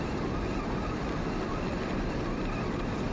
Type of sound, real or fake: real